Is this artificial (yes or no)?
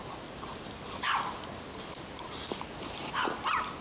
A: no